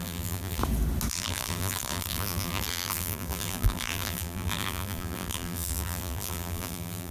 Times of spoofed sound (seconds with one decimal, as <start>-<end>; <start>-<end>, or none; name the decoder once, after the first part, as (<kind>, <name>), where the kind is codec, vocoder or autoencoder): 0.0-0.6 (vocoder, BigVGAN v2); 1.1-7.1